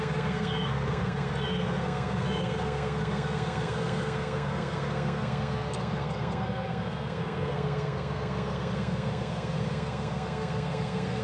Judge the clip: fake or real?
fake